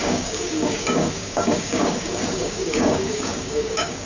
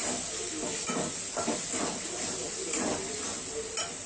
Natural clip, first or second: second